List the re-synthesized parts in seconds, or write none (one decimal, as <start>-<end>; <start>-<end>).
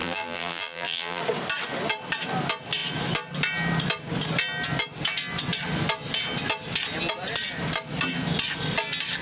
0.0-1.2